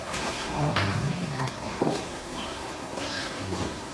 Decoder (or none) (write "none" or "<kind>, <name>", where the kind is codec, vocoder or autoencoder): codec, SNAC